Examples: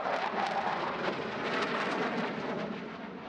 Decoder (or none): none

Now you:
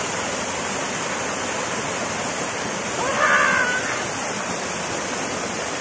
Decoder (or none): none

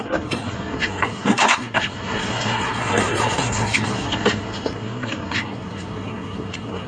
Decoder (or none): codec, SNAC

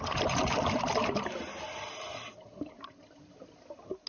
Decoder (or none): none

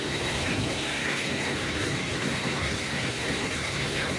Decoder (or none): codec, SNAC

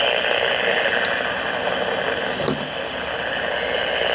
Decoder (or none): none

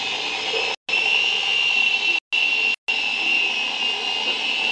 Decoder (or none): none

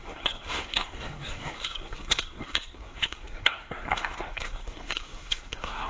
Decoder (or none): codec, SNAC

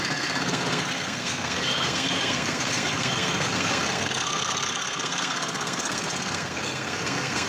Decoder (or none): codec, SNAC